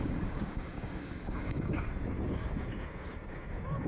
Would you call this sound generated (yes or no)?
yes